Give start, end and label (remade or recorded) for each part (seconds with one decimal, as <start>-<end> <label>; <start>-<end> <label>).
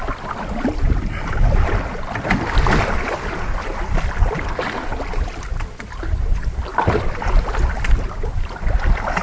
0.0-9.2 recorded